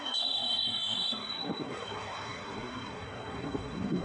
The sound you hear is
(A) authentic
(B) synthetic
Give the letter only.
B